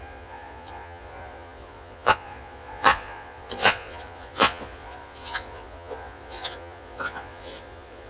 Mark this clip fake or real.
fake